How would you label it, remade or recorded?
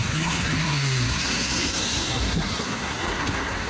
remade